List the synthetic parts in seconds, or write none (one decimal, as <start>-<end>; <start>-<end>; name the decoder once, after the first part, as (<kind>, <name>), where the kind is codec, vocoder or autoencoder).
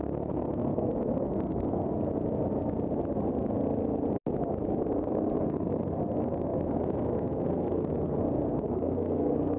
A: 0.0-1.9 (codec, SNAC); 4.8-9.6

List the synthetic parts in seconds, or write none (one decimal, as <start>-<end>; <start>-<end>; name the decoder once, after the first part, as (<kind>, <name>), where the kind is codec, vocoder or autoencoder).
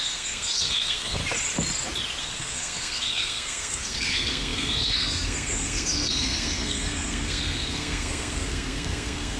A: 0.0-1.2 (codec, SNAC); 2.2-9.4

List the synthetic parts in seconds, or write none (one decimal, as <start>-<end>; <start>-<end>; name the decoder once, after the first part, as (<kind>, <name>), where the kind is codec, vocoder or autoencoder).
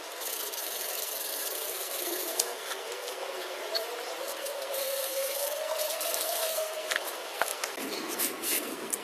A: 0.0-3.6 (codec, SNAC); 4.2-9.0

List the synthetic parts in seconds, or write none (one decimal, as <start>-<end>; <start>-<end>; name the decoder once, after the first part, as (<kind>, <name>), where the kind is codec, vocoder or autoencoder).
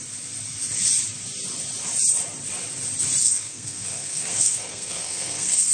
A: 3.2-5.7 (codec, SNAC)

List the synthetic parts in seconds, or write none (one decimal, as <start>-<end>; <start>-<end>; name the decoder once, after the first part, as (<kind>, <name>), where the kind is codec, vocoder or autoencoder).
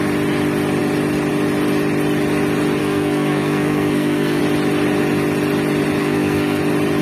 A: 2.8-4.4 (codec, SNAC); 6.0-6.6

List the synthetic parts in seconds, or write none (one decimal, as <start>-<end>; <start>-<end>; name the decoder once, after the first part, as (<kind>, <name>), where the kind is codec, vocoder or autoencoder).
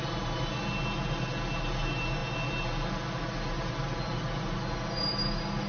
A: none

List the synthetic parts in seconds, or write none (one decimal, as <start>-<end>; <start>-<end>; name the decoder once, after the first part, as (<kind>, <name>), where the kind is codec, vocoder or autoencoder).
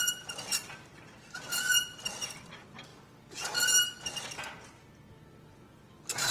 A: none